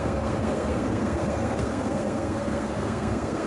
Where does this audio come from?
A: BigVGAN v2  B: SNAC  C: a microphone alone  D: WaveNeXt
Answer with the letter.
B